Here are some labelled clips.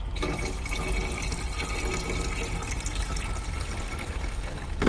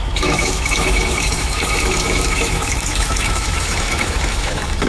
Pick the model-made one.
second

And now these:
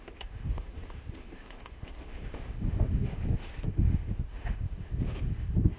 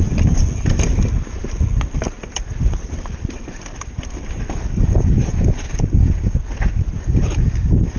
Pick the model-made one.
first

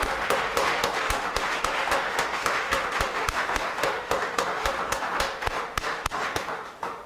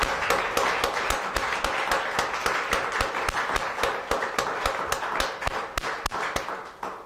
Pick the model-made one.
first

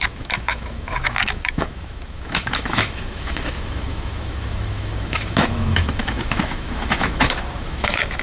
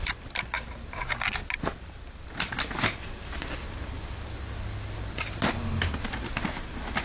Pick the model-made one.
first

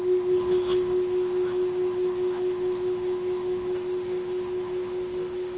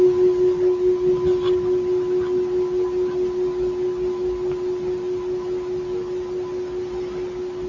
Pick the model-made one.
first